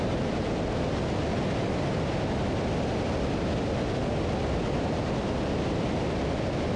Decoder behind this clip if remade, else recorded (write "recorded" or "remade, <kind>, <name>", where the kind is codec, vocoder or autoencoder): recorded